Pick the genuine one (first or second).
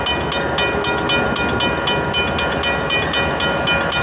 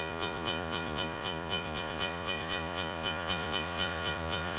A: first